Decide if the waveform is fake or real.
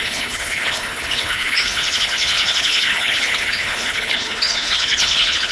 fake